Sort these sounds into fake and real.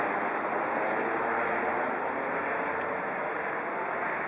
real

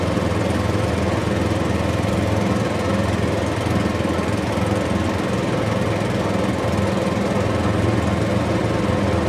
real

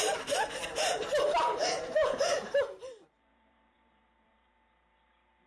fake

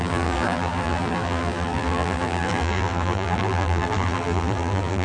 fake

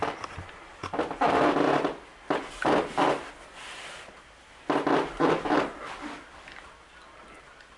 real